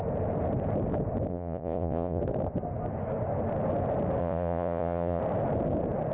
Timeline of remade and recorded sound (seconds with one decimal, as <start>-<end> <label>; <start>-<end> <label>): 0.0-1.3 recorded; 1.3-2.2 remade; 2.2-4.2 recorded; 4.2-5.2 remade; 5.2-6.1 recorded